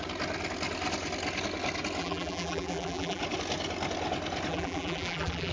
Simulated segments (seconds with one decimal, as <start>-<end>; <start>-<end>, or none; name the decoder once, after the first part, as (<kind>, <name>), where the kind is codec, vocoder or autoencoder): 2.0-3.2 (vocoder, BigVGAN v2); 4.5-5.5